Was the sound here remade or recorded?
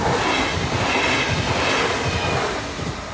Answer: recorded